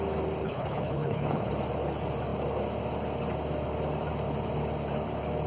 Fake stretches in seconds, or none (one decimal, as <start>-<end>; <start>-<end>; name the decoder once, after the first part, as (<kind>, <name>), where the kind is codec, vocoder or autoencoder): 0.4-1.5 (codec, HILCodec)